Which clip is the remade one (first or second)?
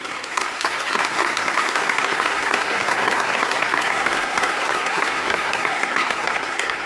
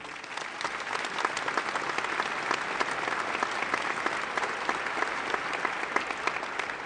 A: first